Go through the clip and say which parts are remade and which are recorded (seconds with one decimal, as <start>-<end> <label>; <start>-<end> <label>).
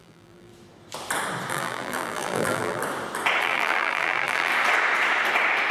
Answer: 0.0-0.5 remade; 0.5-1.5 recorded; 1.5-2.8 remade; 2.8-3.4 recorded; 3.4-4.5 remade; 4.5-5.7 recorded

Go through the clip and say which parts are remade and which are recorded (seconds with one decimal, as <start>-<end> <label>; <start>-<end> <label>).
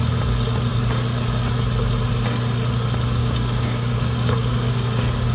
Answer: 0.0-3.2 recorded; 3.2-4.7 remade; 4.7-5.3 recorded